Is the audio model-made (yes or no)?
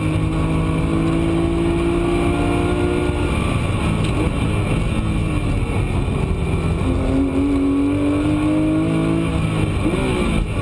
no